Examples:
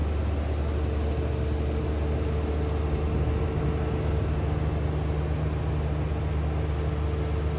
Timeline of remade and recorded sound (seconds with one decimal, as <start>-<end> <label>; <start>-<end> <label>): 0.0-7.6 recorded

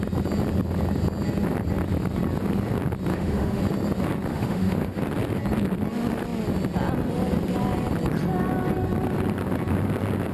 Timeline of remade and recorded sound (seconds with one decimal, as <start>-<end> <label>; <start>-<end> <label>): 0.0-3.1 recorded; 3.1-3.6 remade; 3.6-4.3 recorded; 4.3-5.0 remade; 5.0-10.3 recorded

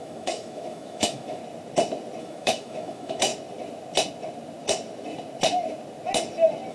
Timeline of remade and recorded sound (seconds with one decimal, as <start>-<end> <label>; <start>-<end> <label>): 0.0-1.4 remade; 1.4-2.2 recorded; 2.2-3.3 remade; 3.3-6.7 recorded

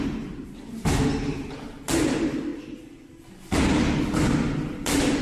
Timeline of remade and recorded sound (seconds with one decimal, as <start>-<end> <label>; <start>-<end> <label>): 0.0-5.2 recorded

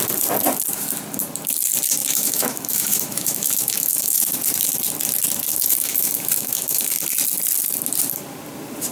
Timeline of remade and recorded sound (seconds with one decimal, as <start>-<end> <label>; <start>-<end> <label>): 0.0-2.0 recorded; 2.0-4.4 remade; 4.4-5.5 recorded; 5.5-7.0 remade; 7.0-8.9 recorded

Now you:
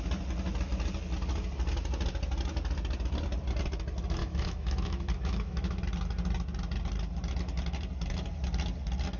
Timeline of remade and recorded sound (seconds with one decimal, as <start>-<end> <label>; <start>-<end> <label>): 0.0-4.2 recorded; 4.2-5.8 remade; 5.8-9.2 recorded